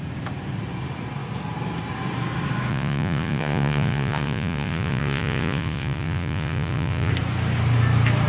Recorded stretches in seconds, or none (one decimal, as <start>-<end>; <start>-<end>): 0.0-2.7; 7.1-8.3